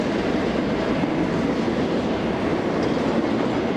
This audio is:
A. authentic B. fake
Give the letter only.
A